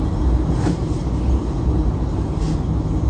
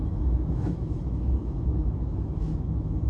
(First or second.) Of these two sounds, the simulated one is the second